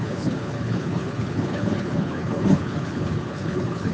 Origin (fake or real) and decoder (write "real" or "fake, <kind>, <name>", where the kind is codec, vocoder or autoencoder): fake, codec, HILCodec